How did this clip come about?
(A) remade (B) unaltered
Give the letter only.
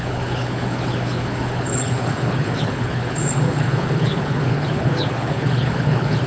A